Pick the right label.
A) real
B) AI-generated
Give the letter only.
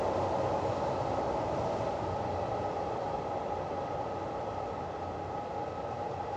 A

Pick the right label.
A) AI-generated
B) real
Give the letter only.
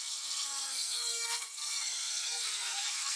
A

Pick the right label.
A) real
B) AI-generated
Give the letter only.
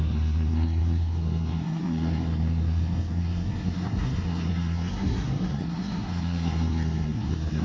B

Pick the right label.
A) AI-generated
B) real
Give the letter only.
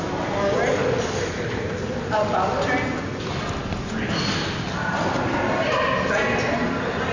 B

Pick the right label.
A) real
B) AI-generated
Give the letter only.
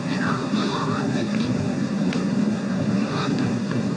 B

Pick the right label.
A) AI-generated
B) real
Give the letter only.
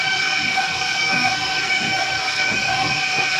A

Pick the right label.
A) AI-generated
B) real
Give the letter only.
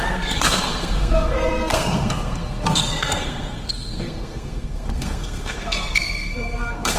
A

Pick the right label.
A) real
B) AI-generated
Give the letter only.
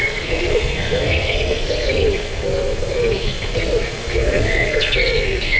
B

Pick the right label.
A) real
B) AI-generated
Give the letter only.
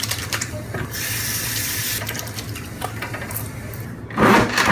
A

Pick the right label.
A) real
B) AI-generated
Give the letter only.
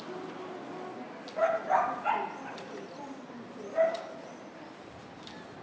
A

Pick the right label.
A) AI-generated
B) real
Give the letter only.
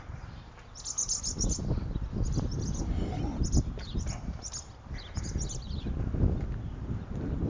B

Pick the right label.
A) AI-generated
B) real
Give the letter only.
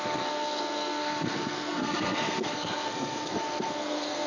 A